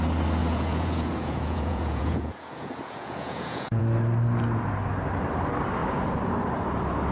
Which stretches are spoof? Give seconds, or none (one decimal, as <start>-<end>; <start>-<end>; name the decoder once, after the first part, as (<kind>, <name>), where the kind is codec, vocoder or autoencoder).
0.4-3.8 (vocoder, Vocos)